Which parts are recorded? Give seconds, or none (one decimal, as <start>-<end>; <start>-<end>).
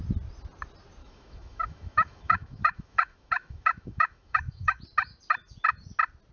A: 0.0-1.0; 4.8-6.3